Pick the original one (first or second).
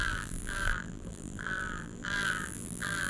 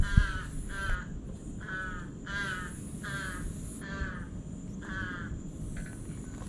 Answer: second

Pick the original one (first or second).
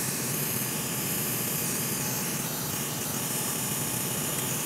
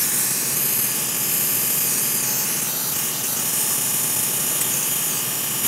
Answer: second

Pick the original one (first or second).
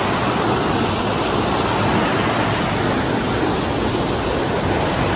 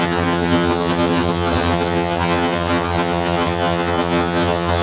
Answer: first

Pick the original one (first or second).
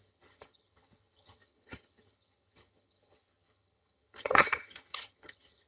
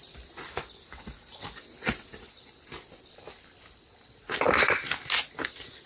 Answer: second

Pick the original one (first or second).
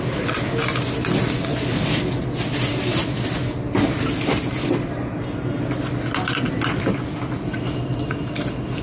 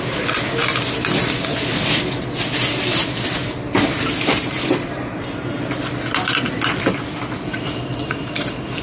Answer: first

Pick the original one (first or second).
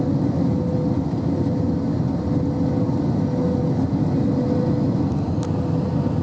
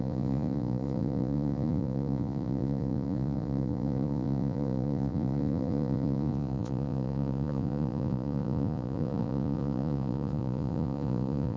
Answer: first